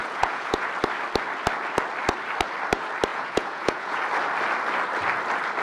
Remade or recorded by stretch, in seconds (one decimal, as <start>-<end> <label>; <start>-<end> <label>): 0.0-0.7 remade; 0.7-3.1 recorded; 3.1-4.0 remade; 4.0-5.6 recorded